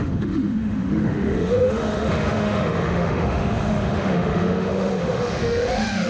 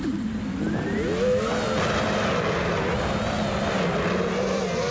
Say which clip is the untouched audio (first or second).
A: second